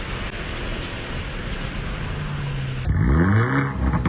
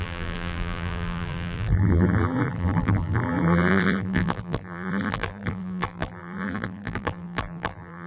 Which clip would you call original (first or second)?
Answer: first